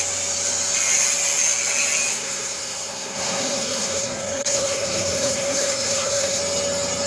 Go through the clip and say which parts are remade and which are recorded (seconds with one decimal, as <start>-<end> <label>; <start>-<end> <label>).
0.0-2.1 recorded; 2.1-6.4 remade; 6.4-7.1 recorded